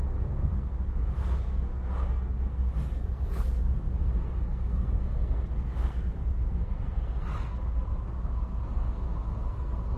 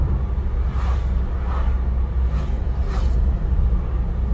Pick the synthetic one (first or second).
first